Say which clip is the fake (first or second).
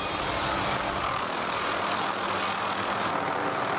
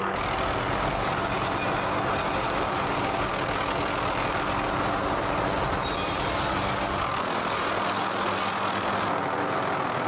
first